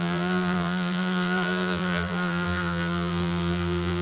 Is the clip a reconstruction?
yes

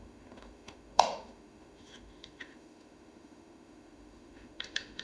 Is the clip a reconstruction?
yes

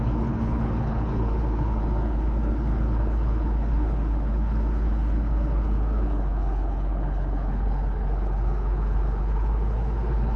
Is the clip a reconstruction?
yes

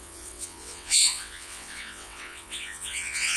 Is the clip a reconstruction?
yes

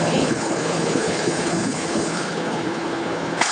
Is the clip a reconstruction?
yes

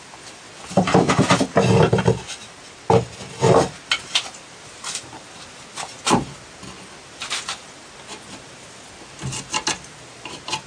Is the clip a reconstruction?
no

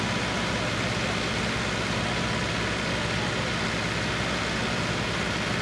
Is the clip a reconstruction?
no